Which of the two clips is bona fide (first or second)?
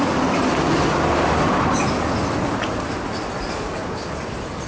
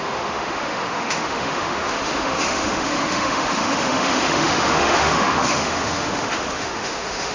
first